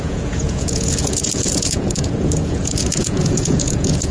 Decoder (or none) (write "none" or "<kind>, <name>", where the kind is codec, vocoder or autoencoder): vocoder, Vocos